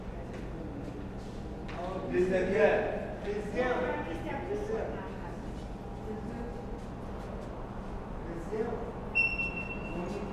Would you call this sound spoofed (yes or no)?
no